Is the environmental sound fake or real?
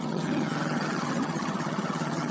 fake